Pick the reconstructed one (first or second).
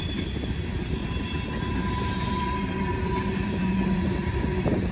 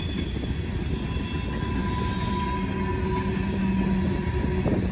first